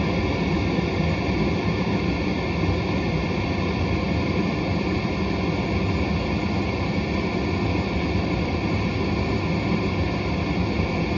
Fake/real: real